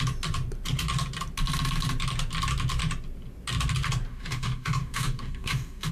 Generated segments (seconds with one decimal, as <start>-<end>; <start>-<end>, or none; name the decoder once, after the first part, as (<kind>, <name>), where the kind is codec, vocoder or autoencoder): 4.1-5.9 (codec, DAC)